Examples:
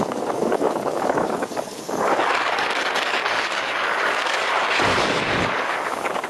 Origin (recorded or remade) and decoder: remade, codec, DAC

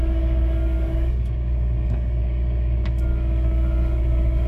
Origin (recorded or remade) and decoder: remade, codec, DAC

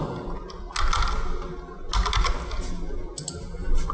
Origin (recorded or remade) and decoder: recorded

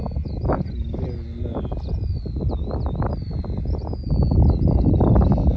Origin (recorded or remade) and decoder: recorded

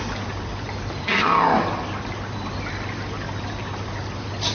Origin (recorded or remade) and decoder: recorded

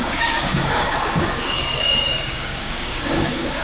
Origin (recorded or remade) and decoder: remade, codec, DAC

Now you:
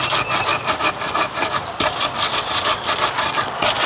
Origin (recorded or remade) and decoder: recorded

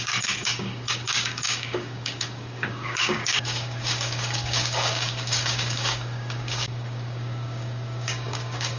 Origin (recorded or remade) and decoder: remade, codec, DAC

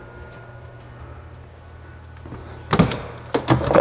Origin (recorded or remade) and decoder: recorded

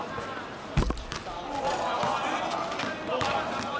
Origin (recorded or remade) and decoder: recorded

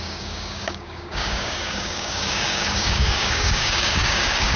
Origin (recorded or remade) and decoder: remade, codec, DAC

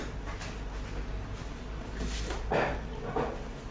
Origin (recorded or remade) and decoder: recorded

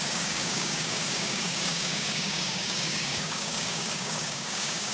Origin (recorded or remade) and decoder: remade, codec, DAC